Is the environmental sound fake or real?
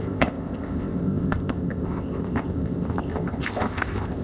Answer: fake